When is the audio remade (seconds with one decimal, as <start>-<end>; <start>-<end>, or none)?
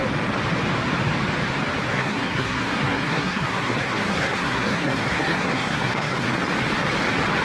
1.9-6.3